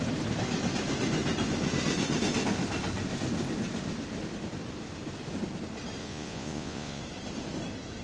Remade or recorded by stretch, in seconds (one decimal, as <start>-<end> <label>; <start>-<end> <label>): 0.0-6.0 recorded; 6.0-7.0 remade; 7.0-8.0 recorded